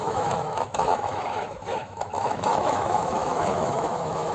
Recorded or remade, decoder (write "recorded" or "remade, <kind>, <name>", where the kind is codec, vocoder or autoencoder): remade, autoencoder, DAC-VAE